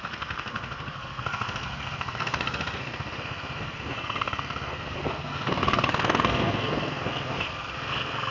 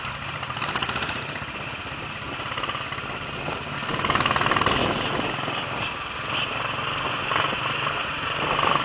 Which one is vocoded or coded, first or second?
first